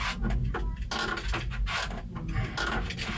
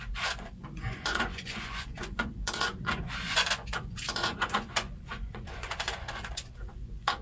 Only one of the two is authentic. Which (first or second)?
first